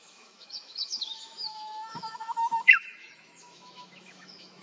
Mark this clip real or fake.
fake